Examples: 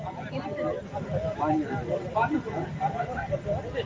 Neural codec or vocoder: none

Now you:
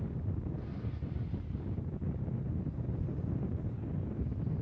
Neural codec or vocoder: none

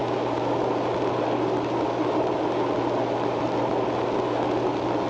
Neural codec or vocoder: none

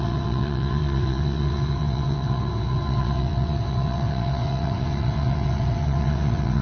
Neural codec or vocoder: vocoder, WaveNeXt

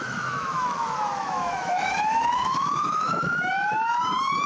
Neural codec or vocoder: autoencoder, DAC-VAE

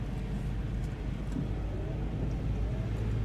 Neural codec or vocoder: none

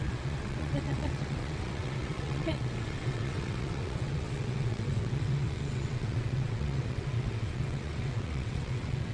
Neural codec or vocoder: vocoder, WaveNeXt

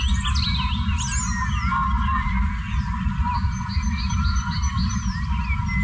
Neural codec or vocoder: none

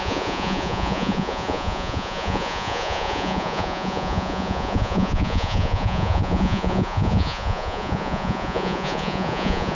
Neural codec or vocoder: vocoder, Vocos